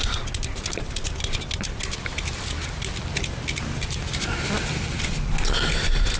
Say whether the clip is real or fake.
real